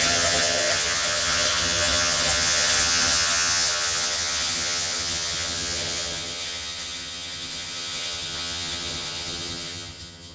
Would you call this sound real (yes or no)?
no